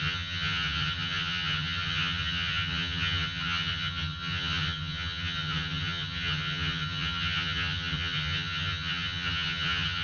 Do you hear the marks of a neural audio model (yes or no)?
yes